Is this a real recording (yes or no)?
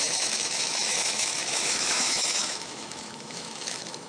no